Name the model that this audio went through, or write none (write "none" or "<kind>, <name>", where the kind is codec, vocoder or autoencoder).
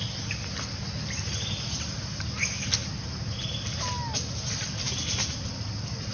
none